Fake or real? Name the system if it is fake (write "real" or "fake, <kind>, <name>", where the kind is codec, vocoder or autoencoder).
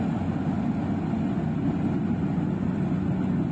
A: real